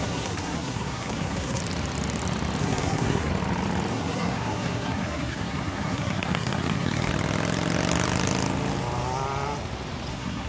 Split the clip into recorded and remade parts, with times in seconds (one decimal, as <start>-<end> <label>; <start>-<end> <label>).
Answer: 0.0-1.6 remade; 1.6-2.6 recorded; 2.6-3.3 remade; 3.3-3.9 recorded; 3.9-7.1 remade; 7.1-10.1 recorded; 10.1-10.5 remade

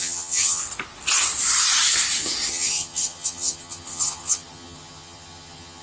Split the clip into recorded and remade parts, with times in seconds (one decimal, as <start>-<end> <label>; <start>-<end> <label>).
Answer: 0.0-0.6 remade; 0.6-2.5 recorded; 2.5-5.8 remade

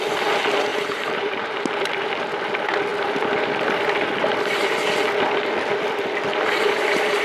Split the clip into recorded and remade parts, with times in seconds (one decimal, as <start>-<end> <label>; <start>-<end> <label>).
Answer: 0.0-0.7 recorded; 0.7-1.6 remade; 1.6-7.2 recorded

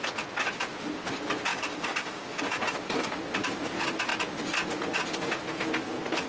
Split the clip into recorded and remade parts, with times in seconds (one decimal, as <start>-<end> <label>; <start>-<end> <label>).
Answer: 0.0-1.5 recorded; 1.5-2.4 remade; 2.4-6.3 recorded